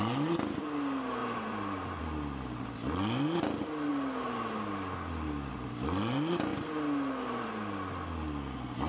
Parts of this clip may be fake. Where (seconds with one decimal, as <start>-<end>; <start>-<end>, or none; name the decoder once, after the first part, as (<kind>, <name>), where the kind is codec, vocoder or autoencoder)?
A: 1.2-2.0 (vocoder, BigVGAN v2)